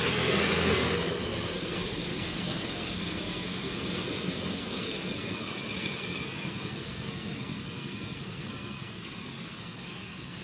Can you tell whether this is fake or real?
fake